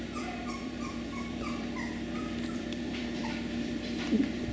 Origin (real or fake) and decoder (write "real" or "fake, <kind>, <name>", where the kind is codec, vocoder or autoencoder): fake, vocoder, BigVGAN v2